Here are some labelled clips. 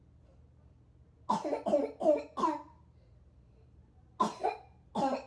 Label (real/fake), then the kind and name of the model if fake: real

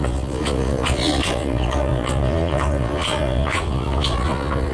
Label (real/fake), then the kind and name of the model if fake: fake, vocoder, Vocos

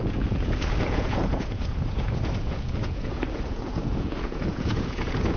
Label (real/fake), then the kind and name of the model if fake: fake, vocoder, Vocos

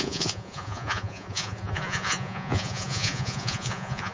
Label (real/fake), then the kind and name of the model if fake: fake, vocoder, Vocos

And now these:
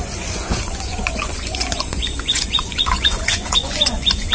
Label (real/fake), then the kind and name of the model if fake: fake, vocoder, Vocos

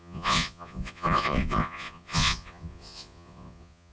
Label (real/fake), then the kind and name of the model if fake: fake, vocoder, Vocos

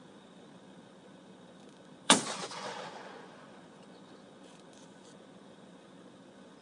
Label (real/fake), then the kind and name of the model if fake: fake, vocoder, Vocos